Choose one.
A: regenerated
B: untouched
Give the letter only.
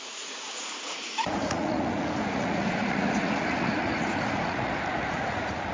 A